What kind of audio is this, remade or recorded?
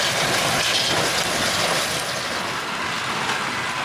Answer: recorded